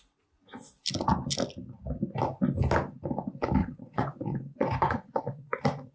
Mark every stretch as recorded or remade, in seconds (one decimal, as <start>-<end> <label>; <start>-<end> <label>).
0.0-3.6 recorded; 3.6-5.2 remade; 5.2-5.9 recorded